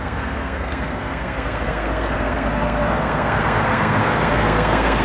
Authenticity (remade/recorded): remade